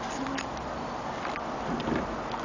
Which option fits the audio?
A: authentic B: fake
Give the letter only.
B